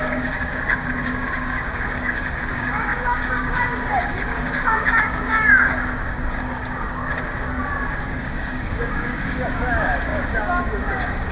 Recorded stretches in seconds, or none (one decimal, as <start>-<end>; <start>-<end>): none